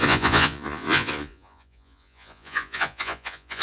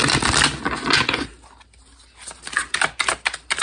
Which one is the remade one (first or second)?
first